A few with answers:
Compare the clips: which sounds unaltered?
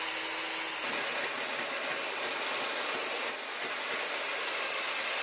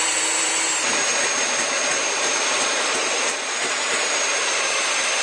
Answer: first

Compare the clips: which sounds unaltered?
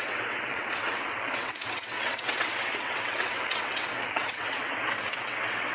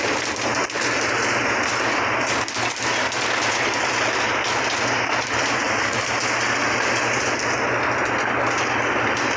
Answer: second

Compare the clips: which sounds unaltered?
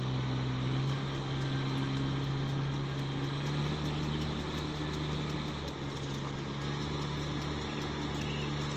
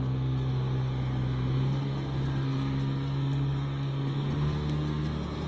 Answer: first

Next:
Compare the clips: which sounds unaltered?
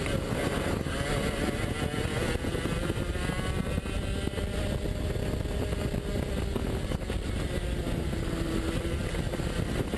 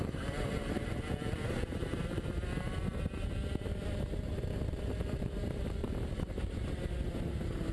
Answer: first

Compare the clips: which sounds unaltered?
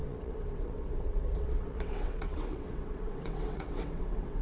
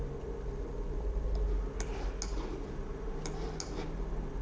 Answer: second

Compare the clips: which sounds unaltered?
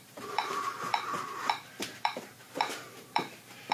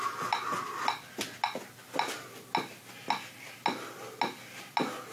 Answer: second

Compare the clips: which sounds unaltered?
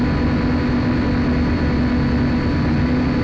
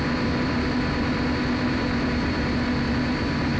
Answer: first